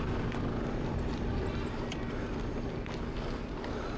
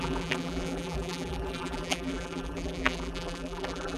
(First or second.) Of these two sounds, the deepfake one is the second